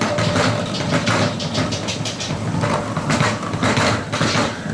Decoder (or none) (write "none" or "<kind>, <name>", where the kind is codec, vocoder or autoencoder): none